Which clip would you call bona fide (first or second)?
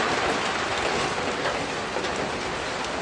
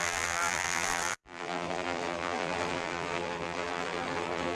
first